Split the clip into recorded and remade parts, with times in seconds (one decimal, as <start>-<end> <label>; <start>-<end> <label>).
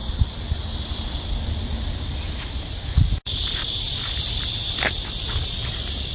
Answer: 0.0-6.1 recorded